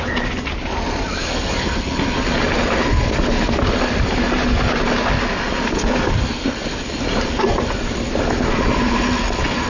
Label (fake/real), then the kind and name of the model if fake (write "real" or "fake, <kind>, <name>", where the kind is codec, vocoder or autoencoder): real